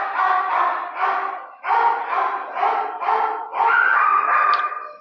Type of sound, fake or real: real